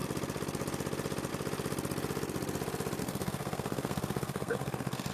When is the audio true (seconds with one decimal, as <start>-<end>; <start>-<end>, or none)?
0.0-3.0